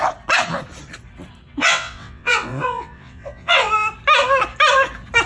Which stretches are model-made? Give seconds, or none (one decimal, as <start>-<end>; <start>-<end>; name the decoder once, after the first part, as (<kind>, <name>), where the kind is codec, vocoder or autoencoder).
1.6-3.7 (vocoder, WaveNeXt)